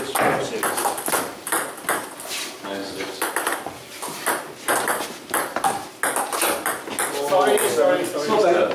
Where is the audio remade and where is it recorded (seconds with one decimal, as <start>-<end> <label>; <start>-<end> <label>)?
0.0-2.8 recorded; 2.8-5.9 remade; 5.9-8.7 recorded